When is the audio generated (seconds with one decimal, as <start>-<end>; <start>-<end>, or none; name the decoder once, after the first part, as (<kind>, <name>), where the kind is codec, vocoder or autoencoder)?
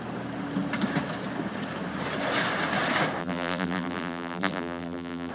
3.2-5.3 (vocoder, BigVGAN v2)